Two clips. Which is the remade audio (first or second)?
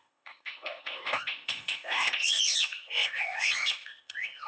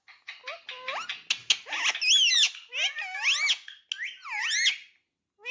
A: first